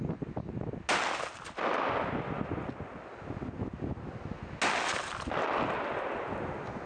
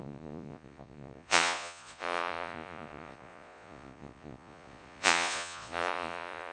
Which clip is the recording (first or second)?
first